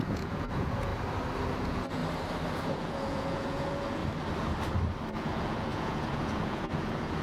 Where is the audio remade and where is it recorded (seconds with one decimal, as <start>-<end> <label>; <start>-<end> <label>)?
0.0-0.9 remade; 0.9-1.6 recorded; 1.6-2.0 remade; 2.0-2.5 recorded; 2.5-4.0 remade; 4.0-5.1 recorded; 5.1-7.2 remade